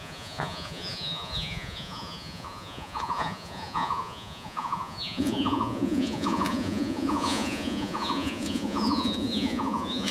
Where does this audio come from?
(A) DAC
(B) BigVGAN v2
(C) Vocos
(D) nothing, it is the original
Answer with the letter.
C